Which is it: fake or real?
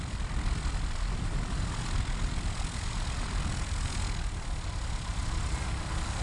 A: real